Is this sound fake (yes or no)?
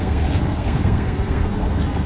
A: yes